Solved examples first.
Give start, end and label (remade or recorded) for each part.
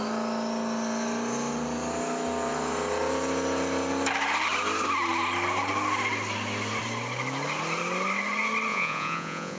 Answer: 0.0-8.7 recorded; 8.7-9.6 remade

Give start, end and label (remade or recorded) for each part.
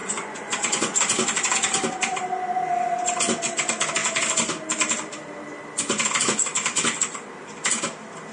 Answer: 0.0-1.0 remade; 1.0-8.3 recorded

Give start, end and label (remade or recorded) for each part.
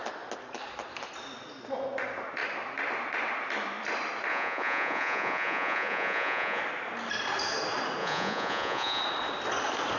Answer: 0.0-4.3 recorded; 4.3-6.6 remade; 6.6-8.0 recorded; 8.0-9.0 remade; 9.0-10.0 recorded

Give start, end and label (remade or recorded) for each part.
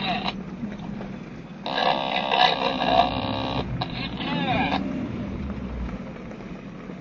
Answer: 0.0-7.0 recorded